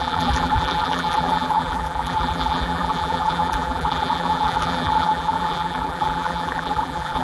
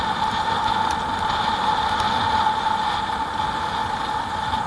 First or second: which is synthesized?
first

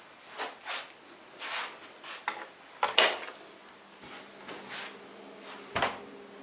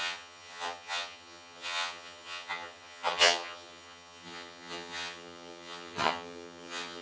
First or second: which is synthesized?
second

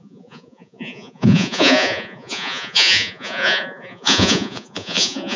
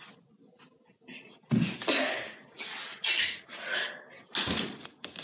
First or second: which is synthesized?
first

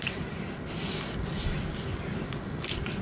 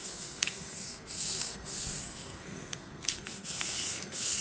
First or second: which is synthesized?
second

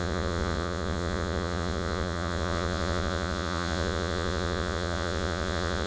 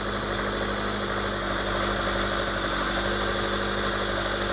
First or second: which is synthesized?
first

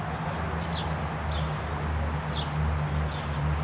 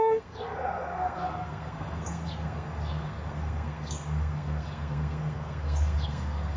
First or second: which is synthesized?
second